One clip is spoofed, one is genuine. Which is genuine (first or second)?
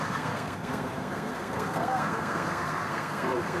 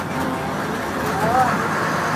second